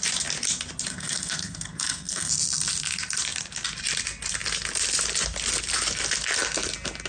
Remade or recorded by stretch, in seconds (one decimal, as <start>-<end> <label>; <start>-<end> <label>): 0.0-0.9 recorded; 0.9-2.3 remade; 2.3-7.1 recorded